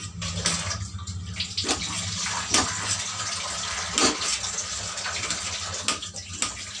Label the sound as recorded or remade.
recorded